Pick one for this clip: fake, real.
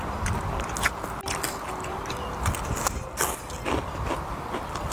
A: real